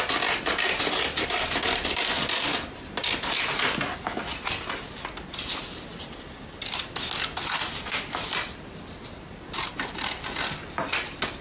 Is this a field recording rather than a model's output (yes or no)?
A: yes